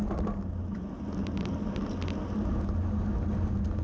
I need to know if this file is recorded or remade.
recorded